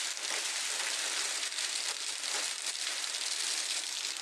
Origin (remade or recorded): recorded